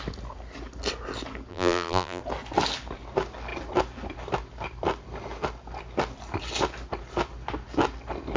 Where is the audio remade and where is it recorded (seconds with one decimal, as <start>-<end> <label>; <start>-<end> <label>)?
0.0-1.5 recorded; 1.5-2.2 remade; 2.2-8.4 recorded